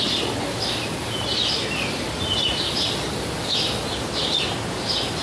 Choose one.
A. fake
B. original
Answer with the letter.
A